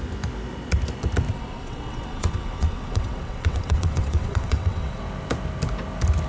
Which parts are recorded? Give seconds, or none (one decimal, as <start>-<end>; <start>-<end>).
0.0-1.3; 5.0-6.3